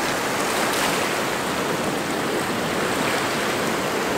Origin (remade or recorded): recorded